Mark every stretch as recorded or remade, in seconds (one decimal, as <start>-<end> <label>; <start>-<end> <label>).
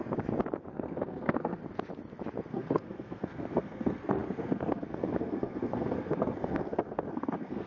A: 0.0-0.7 recorded; 0.7-1.6 remade; 1.6-2.5 recorded; 2.5-7.7 remade